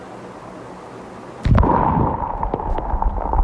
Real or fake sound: real